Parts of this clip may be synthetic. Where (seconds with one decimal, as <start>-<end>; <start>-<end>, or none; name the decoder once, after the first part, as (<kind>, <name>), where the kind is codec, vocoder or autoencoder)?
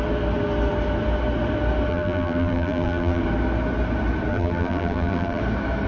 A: 1.9-3.2 (vocoder, BigVGAN v2); 4.3-5.4